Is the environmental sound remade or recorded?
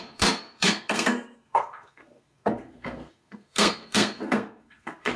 remade